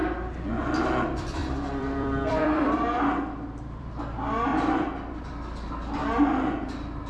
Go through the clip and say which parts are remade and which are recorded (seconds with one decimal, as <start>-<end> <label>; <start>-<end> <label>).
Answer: 0.0-1.4 recorded; 1.4-3.9 remade; 3.9-4.5 recorded; 4.5-5.3 remade; 5.3-7.1 recorded